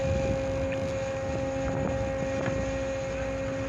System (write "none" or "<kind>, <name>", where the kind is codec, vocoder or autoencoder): none